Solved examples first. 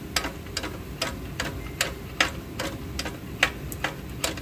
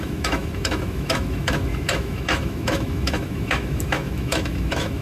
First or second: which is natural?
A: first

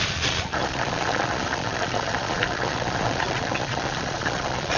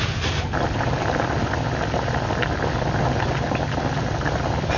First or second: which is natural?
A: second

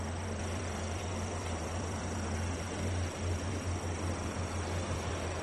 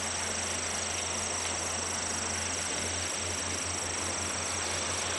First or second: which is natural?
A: second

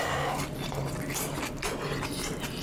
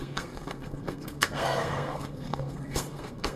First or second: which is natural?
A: first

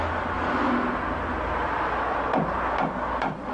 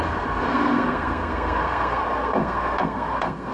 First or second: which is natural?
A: first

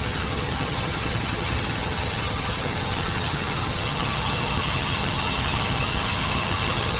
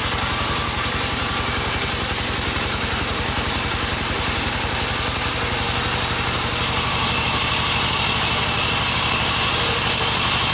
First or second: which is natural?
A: second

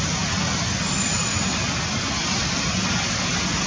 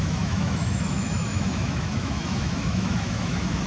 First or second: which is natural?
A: first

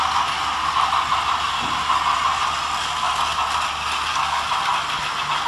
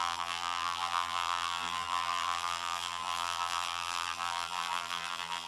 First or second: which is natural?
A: first